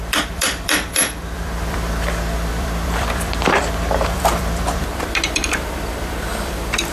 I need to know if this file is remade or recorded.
remade